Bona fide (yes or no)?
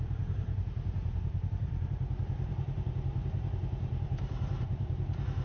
no